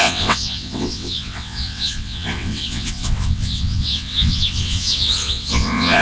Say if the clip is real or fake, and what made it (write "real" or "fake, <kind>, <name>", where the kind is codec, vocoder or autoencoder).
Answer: fake, vocoder, WaveNeXt